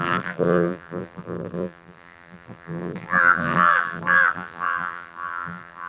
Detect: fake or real fake